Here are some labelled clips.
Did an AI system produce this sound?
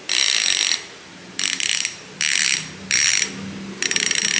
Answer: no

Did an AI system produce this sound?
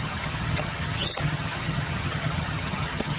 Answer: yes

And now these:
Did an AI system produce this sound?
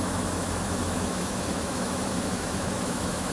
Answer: yes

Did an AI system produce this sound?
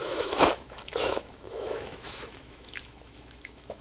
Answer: yes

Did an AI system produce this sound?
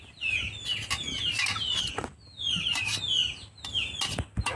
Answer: no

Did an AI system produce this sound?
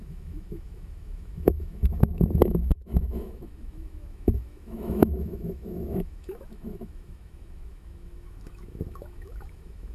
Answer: yes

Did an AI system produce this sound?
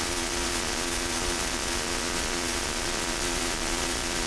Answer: yes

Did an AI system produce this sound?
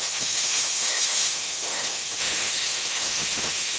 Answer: yes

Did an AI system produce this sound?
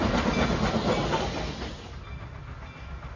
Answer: no